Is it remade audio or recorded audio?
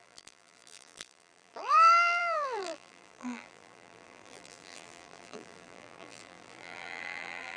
remade